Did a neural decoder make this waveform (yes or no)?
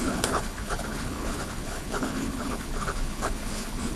yes